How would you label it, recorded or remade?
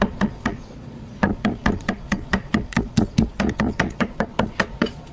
remade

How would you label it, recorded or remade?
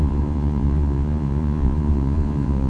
remade